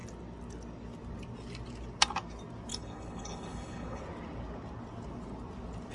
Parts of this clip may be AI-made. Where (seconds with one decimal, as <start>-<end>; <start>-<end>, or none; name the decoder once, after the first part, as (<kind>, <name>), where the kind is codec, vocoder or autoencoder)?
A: 2.7-4.0 (codec, HILCodec)